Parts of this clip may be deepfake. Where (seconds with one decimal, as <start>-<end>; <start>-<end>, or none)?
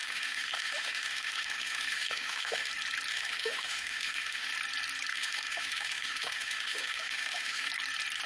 0.0-2.7; 3.1-4.5; 5.1-7.7